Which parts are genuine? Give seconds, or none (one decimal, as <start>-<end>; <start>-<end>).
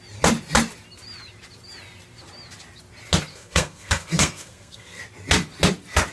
0.0-3.3; 5.0-6.1